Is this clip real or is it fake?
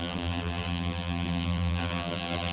fake